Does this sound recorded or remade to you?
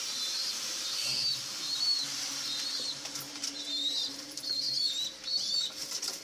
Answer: remade